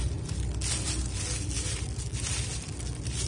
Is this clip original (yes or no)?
yes